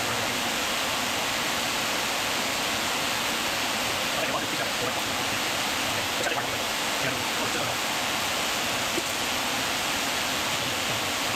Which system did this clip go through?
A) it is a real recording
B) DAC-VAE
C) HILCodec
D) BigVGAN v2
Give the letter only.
A